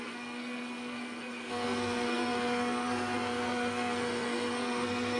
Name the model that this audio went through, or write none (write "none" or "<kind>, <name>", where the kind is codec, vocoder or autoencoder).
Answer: codec, SNAC